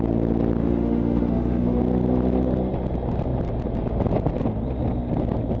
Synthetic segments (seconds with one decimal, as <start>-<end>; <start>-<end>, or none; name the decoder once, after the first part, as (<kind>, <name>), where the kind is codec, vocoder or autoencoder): 0.6-1.8 (autoencoder, DAC-VAE)